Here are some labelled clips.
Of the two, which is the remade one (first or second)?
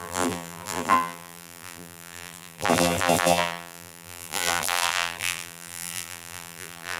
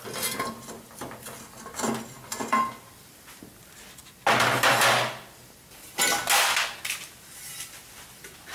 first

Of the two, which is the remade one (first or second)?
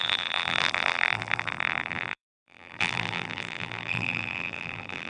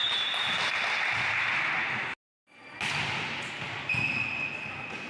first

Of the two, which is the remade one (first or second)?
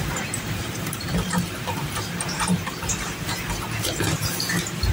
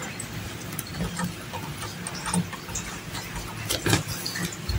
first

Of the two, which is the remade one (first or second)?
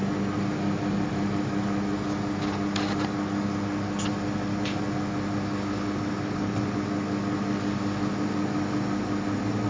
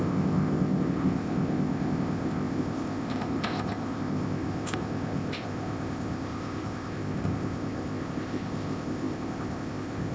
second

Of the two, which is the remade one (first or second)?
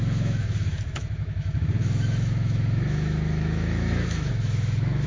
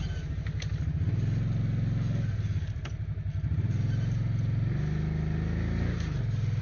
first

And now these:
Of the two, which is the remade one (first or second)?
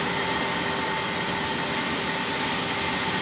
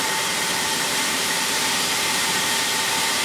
second